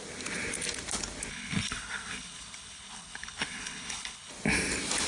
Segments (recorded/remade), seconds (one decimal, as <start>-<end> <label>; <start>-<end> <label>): 0.0-1.3 recorded; 1.3-4.3 remade; 4.3-5.1 recorded